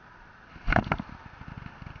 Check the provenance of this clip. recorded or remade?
recorded